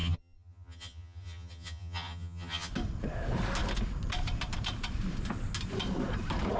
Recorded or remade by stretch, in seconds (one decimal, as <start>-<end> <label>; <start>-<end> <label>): 0.0-2.7 remade; 2.7-6.6 recorded